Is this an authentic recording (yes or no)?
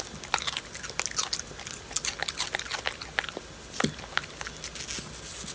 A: yes